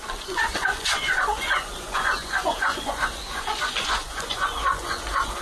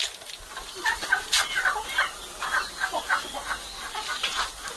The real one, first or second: second